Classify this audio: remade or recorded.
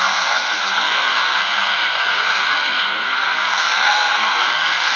remade